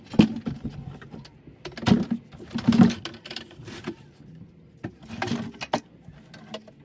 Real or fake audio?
real